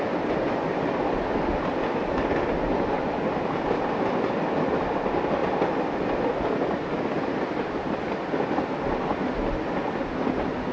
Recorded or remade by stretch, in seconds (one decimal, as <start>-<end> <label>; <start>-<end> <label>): 0.0-10.7 recorded